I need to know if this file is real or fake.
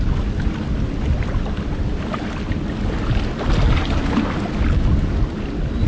real